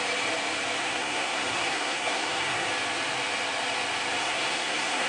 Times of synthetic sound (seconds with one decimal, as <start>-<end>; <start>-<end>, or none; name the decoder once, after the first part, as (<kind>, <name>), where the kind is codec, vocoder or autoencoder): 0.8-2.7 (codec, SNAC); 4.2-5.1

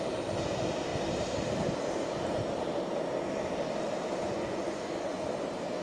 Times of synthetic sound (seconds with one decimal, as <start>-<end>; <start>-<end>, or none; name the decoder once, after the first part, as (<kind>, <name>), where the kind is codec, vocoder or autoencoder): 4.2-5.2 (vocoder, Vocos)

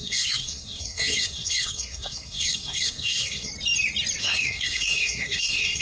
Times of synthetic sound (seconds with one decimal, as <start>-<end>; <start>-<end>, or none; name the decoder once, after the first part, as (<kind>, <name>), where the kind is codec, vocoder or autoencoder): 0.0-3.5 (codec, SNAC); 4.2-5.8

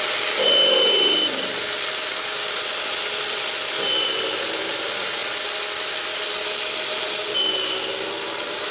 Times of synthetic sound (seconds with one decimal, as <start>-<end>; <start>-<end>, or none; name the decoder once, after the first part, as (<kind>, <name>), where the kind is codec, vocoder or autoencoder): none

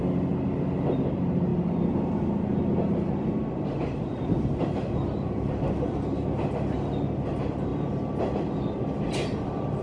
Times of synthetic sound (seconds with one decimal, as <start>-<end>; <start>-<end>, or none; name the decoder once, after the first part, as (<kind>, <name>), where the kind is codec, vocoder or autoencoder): none

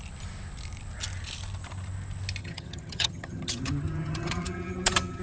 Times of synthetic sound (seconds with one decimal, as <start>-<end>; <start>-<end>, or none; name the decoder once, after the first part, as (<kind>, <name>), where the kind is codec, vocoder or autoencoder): 2.4-5.2 (vocoder, HiFi-GAN)

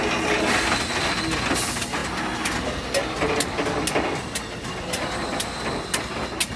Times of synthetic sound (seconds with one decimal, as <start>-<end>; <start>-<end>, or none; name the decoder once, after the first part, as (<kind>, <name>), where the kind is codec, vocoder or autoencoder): none